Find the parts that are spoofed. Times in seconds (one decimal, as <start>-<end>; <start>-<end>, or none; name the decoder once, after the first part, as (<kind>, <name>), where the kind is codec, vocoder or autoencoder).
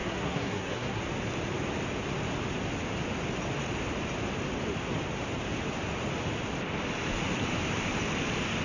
0.0-1.0 (codec, SNAC)